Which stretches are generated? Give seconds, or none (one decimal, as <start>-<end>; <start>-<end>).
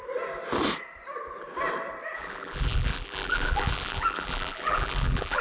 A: 2.2-5.4